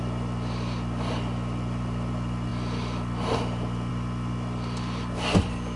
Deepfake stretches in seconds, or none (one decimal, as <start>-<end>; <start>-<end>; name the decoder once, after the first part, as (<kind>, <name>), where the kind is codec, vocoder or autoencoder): none